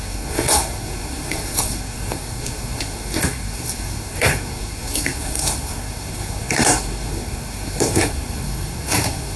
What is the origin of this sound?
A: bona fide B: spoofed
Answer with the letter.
B